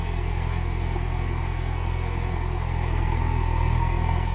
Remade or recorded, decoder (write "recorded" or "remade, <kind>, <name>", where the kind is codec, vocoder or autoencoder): remade, codec, SNAC